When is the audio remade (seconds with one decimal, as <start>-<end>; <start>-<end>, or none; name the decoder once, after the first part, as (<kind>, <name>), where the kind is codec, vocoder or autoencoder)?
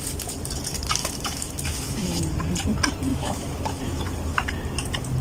1.0-2.2 (autoencoder, DAC-VAE); 3.1-3.8